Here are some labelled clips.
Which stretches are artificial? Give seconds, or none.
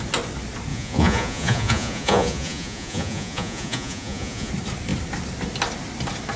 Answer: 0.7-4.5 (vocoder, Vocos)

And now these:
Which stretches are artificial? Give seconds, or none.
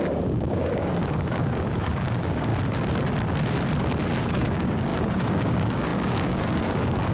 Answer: 0.0-2.5 (codec, DAC); 4.2-7.1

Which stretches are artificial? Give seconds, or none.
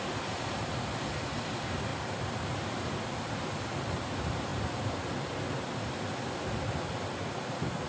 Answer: none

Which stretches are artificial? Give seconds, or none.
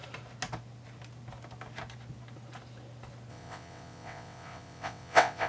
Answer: 3.3-5.5 (vocoder, WaveNeXt)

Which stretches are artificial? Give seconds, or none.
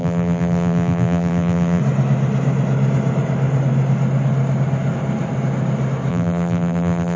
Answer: 0.0-1.8 (vocoder, BigVGAN v2); 6.1-7.2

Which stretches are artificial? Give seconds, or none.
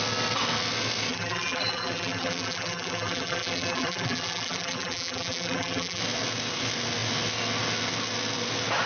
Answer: 1.1-6.0 (vocoder, BigVGAN v2)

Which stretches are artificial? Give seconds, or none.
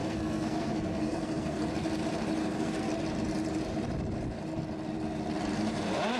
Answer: 0.0-1.7 (codec, SNAC); 2.4-2.9